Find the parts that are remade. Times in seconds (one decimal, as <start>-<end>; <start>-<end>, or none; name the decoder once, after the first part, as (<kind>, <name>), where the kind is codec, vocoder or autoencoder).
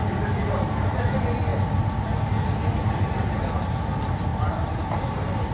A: 4.3-4.9 (vocoder, BigVGAN v2)